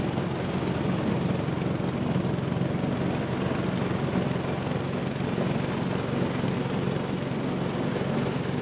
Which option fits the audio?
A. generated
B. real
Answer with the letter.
B